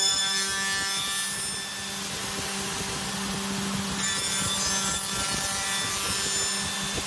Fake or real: real